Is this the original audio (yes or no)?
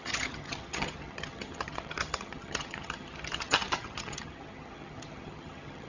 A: no